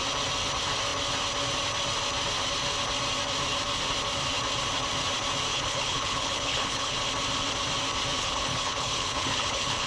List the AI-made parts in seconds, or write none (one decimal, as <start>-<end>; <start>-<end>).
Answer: 5.5-7.0; 8.2-9.9